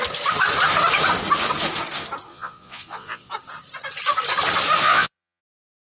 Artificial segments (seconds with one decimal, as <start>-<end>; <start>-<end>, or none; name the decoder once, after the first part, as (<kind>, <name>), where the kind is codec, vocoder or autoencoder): 2.3-3.3 (vocoder, Vocos); 4.8-5.4